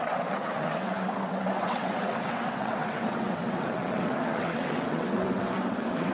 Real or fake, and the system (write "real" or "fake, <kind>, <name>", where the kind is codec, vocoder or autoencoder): fake, vocoder, WaveNeXt